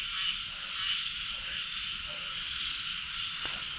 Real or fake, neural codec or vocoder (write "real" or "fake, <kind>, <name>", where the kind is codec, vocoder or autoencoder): real